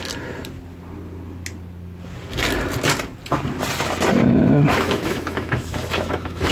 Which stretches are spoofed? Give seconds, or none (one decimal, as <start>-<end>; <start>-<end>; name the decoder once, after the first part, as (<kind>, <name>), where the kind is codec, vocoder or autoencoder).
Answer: 4.7-6.5 (autoencoder, DAC-VAE)